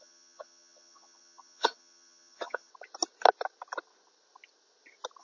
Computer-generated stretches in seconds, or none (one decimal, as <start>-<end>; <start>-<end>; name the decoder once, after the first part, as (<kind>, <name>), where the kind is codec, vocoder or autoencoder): 0.0-2.7 (vocoder, HiFi-GAN)